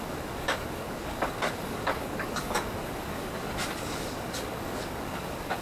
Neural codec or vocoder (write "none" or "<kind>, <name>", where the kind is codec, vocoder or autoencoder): codec, DAC